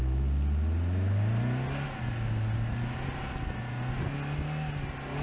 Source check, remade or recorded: recorded